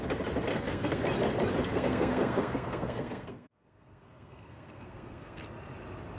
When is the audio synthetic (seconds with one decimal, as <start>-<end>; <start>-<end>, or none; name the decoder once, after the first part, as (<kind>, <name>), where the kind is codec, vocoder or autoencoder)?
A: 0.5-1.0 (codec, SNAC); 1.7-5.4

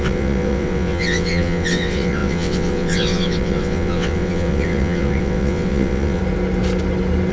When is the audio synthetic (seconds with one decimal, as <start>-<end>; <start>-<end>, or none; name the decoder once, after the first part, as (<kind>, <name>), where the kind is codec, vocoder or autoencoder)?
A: 0.0-6.2 (vocoder, WaveNeXt)

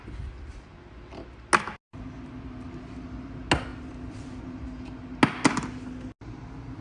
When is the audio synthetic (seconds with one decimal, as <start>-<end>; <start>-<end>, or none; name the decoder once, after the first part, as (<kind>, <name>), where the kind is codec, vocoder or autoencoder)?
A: 3.7-4.4 (vocoder, BigVGAN v2)

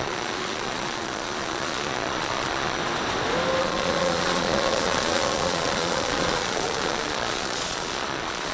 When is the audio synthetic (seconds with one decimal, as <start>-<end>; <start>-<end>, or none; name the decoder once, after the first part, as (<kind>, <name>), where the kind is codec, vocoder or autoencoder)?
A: 0.0-2.8 (vocoder, Vocos); 3.6-8.5

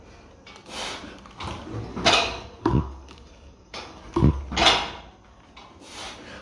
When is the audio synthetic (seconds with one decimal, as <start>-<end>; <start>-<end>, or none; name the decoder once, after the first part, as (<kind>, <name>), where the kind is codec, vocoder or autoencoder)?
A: 1.9-4.4 (codec, DAC)